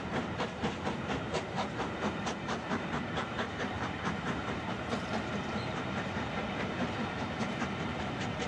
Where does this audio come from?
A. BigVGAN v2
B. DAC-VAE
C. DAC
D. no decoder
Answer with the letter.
A